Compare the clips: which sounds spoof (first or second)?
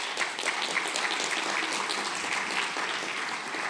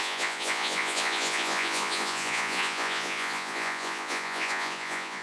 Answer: second